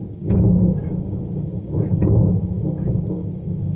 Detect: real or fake fake